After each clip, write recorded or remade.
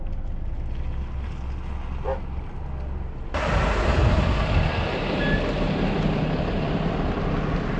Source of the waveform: recorded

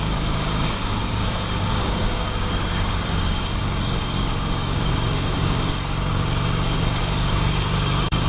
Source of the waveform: remade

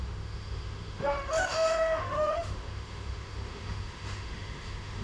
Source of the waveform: remade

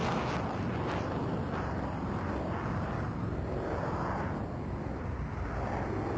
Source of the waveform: recorded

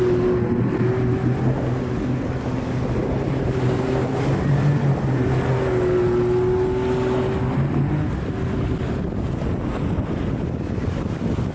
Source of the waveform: recorded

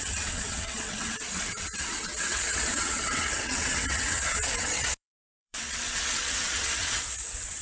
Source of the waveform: remade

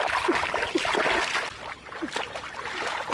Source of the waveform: recorded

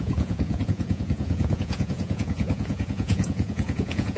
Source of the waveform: remade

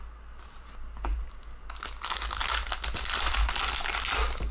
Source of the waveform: recorded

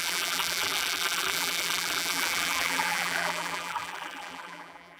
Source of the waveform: remade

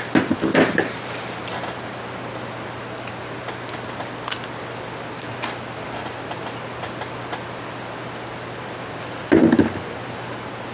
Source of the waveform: recorded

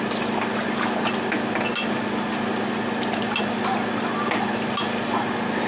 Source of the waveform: recorded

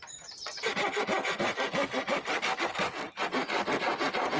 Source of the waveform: recorded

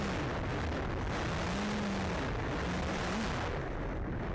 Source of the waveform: recorded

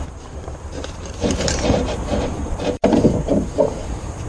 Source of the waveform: remade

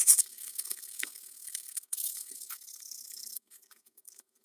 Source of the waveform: remade